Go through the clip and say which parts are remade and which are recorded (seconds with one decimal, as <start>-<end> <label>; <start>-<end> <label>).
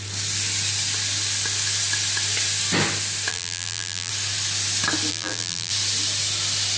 0.0-3.3 recorded; 3.3-4.1 remade; 4.1-5.1 recorded; 5.1-5.7 remade; 5.7-6.8 recorded